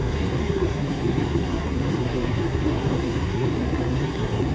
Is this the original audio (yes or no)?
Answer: no